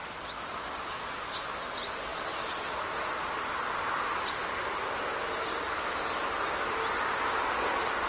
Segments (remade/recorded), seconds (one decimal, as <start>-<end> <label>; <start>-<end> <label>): 0.0-8.1 recorded